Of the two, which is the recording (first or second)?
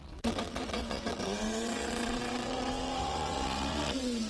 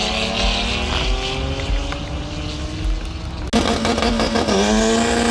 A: second